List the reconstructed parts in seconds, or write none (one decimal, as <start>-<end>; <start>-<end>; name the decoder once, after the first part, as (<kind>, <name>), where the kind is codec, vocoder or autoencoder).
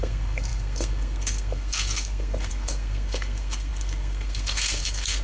0.0-5.2 (codec, SNAC)